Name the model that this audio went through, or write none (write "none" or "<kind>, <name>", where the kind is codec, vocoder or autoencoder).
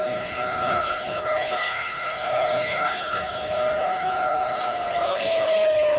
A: codec, HILCodec